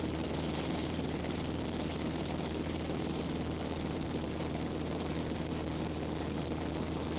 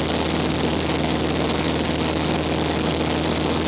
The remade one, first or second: first